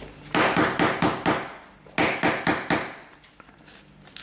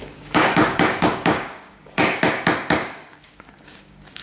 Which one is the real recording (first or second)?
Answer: first